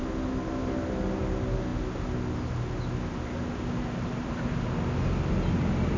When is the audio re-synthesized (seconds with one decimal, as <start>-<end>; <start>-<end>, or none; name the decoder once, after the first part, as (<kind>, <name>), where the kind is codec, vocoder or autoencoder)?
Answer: none